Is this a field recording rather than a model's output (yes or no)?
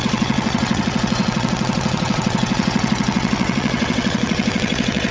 no